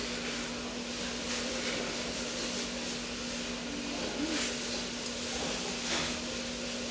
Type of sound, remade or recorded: recorded